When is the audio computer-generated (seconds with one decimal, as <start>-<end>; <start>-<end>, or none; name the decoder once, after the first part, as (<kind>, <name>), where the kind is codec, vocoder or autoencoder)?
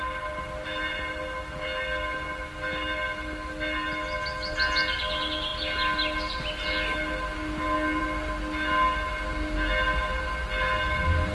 none